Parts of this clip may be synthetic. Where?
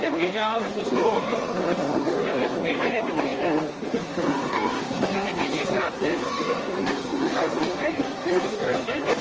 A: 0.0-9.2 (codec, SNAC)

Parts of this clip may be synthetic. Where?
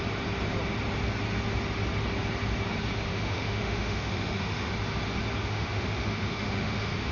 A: 3.1-4.7 (autoencoder, DAC-VAE); 5.4-7.1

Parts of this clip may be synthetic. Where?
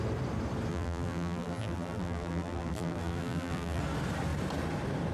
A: 0.7-3.8 (vocoder, BigVGAN v2)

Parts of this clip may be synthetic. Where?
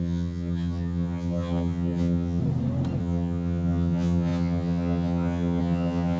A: 0.0-2.4 (vocoder, HiFi-GAN); 3.0-6.2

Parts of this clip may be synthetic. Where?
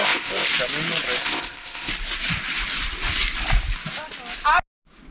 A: 0.0-0.5 (codec, ZipCodec); 1.2-1.9